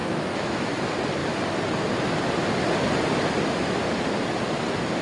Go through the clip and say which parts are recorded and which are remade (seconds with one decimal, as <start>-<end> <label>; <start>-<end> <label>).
0.0-0.7 remade; 0.7-5.0 recorded